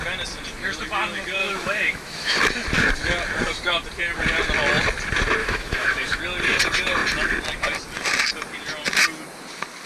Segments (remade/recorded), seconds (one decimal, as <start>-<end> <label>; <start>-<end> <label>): 0.0-1.4 recorded; 1.4-2.4 remade; 2.4-5.4 recorded; 5.4-6.2 remade; 6.2-9.9 recorded